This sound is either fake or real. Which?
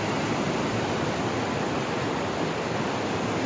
real